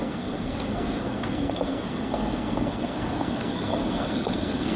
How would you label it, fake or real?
fake